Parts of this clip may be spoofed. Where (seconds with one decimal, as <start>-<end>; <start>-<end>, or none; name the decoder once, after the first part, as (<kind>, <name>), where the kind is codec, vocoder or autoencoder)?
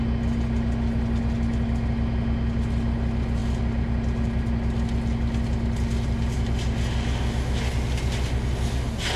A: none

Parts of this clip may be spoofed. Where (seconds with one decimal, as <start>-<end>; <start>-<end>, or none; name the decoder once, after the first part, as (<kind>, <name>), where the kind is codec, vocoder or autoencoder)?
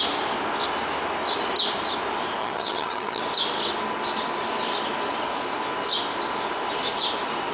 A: 2.4-3.2 (vocoder, HiFi-GAN)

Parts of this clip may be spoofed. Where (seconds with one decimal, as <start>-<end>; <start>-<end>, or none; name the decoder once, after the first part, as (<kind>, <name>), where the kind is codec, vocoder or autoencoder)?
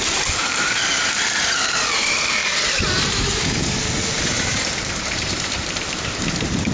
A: 0.0-2.4 (vocoder, BigVGAN v2); 4.1-6.7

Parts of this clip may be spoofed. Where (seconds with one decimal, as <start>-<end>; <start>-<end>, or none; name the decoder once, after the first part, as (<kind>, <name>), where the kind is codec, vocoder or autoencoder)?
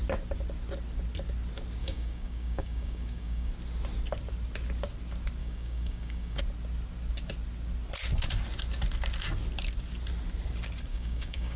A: 1.8-3.5 (codec, DAC); 5.4-6.4; 10.9-11.6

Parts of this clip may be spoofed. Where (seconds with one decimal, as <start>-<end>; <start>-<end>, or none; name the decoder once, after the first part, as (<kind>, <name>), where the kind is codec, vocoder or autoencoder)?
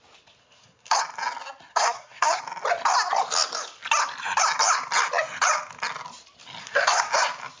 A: 0.4-1.0 (codec, SNAC); 1.7-2.4; 6.6-7.1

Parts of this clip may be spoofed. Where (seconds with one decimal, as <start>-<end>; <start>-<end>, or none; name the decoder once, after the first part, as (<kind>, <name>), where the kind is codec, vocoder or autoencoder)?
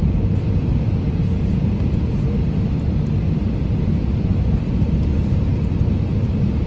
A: none